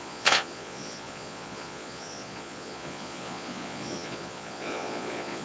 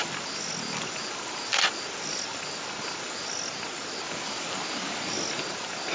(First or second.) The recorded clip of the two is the second